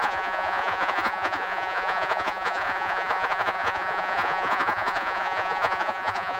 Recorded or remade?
remade